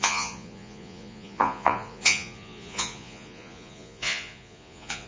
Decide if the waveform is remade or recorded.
remade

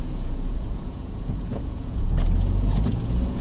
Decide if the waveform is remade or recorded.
remade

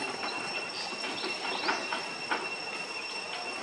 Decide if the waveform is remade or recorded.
recorded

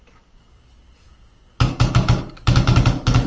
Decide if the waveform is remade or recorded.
remade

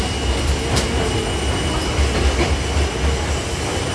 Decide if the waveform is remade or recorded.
recorded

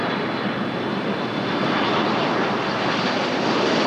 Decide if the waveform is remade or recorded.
recorded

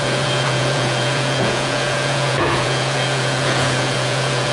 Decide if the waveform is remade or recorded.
remade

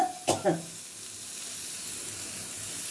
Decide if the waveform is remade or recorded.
recorded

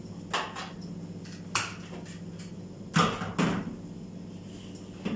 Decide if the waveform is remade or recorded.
recorded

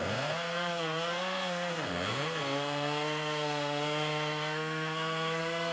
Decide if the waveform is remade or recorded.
remade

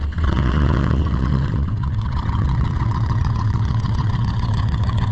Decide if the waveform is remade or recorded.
remade